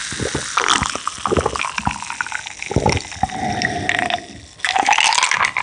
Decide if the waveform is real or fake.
real